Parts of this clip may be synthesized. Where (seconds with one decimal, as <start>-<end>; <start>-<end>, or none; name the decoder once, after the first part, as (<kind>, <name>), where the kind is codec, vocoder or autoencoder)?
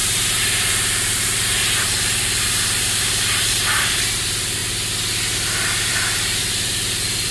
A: 0.0-4.6 (vocoder, BigVGAN v2); 5.9-7.3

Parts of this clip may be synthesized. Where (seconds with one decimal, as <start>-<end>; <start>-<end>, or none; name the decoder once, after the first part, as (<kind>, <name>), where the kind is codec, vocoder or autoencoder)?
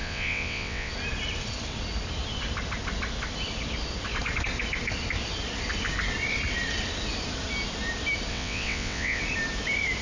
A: 0.0-0.9 (vocoder, WaveNeXt); 8.3-9.2